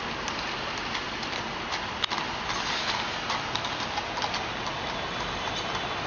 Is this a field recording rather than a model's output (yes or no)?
yes